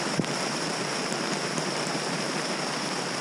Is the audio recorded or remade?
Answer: remade